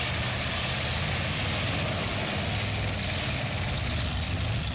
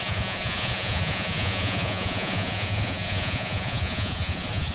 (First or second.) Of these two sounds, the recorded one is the first